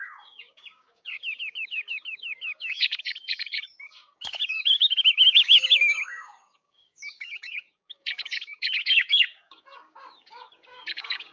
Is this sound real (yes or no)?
no